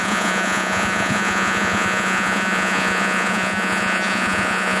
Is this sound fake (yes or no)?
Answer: yes